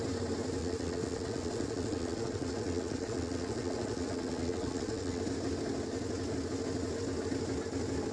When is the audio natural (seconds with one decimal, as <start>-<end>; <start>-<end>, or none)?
0.0-0.6; 5.2-8.1

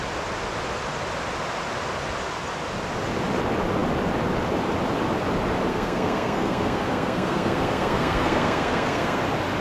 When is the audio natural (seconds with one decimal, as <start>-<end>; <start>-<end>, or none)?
0.0-5.7; 9.2-9.6

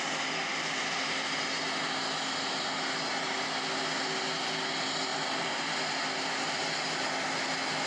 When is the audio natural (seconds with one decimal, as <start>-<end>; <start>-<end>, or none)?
0.0-5.1; 6.0-7.9

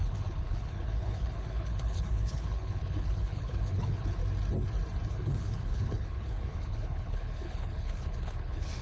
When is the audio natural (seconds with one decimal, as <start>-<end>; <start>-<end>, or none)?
4.2-5.1

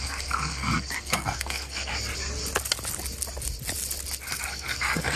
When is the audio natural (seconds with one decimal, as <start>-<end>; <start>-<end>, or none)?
1.9-4.3